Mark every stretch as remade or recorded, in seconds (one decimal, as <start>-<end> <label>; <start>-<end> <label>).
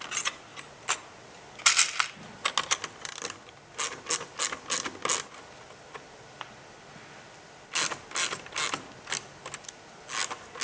0.0-10.6 recorded